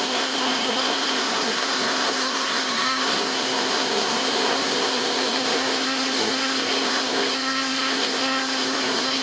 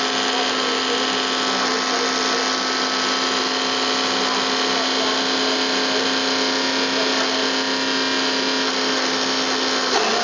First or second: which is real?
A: second